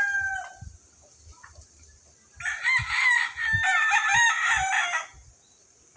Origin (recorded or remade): recorded